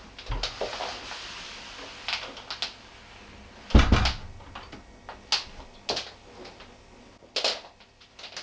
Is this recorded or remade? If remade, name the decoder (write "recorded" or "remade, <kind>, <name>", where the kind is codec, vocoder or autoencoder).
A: recorded